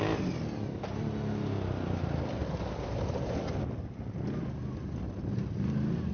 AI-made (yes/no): no